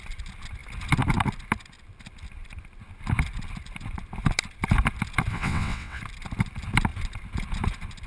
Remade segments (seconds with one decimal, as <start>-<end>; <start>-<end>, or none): 5.3-6.0